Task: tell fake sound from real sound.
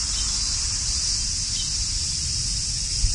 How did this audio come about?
real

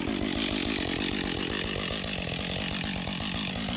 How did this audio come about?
real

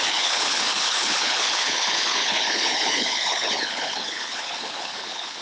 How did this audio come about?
fake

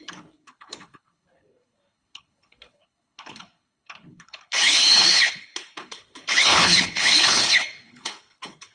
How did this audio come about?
fake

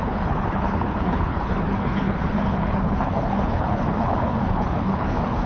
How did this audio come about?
fake